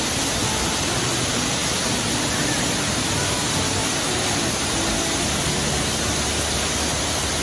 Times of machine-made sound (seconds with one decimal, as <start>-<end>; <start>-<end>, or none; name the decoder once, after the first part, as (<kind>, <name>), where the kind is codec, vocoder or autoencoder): 3.8-4.5 (vocoder, BigVGAN v2)